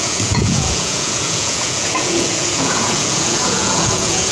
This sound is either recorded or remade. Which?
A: remade